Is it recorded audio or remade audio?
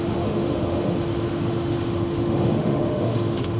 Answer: remade